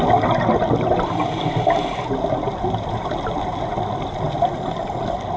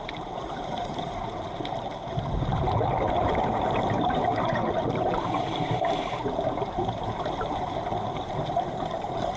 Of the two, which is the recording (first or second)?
first